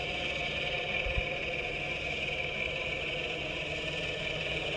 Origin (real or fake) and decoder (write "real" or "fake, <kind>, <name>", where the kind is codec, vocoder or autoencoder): real